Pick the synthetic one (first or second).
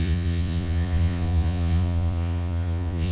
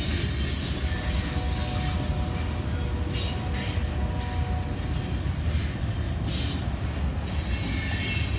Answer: first